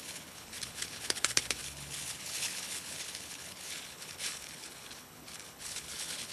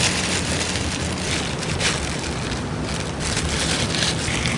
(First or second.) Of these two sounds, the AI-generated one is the first